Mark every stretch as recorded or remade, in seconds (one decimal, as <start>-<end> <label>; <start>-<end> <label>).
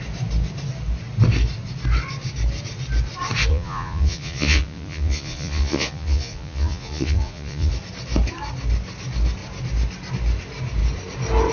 0.0-3.5 recorded; 3.5-7.7 remade; 7.7-11.5 recorded